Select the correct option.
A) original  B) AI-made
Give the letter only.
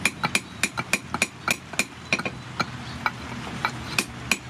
A